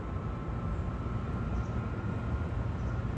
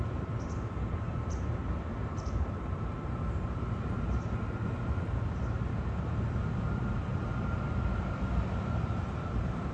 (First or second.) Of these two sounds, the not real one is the second